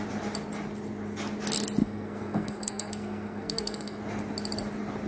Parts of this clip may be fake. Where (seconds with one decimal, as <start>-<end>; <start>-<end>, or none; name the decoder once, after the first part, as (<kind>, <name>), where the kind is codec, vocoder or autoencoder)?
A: 1.8-4.0 (codec, SNAC)